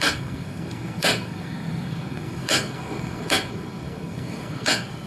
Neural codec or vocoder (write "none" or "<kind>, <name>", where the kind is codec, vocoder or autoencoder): codec, SNAC